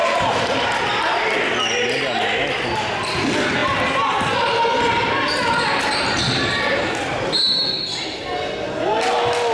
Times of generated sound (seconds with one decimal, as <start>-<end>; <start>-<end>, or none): 0.0-0.7